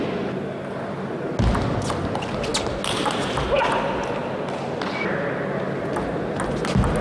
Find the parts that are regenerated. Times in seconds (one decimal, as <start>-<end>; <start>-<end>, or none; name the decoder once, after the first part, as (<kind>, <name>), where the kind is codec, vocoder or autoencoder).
none